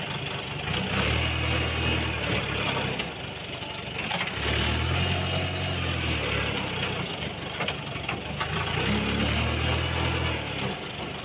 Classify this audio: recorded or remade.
recorded